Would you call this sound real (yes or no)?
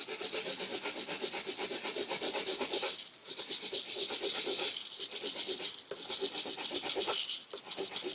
yes